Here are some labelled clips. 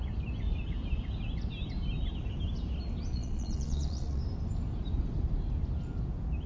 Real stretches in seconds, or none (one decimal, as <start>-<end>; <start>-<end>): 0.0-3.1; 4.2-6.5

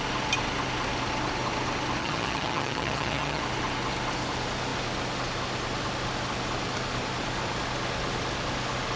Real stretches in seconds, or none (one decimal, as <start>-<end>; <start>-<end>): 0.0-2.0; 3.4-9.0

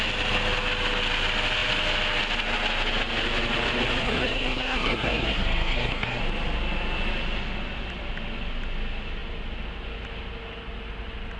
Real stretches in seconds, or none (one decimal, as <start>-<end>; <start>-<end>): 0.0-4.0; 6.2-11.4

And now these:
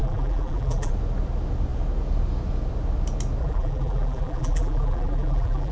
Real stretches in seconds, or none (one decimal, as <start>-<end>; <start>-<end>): 0.9-3.4

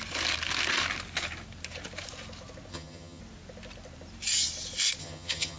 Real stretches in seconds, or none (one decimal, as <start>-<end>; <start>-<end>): 0.0-2.7; 3.2-5.0

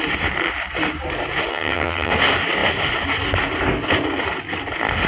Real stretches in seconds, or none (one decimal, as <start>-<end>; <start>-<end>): 0.0-1.5; 2.1-5.1

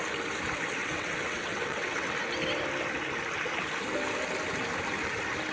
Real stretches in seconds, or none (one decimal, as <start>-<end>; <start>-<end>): 0.0-0.8; 2.1-5.5